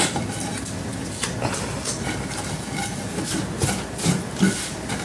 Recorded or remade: recorded